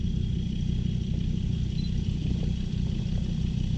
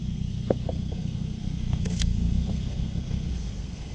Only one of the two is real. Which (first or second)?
first